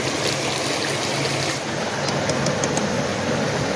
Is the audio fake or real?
real